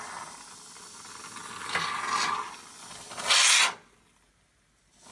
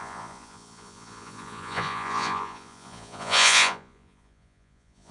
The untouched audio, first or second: first